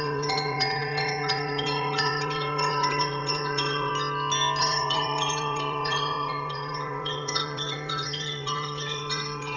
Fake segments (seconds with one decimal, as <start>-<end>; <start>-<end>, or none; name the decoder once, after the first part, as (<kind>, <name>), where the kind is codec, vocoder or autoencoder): 0.0-3.9 (vocoder, WaveNeXt); 4.6-9.6